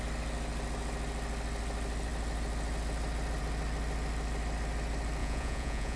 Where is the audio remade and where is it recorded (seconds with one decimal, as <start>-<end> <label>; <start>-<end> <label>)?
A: 0.0-5.2 recorded; 5.2-6.0 remade